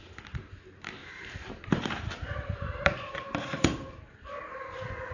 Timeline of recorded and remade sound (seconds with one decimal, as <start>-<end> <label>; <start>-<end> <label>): 0.0-1.0 recorded; 1.0-4.0 remade; 4.0-5.1 recorded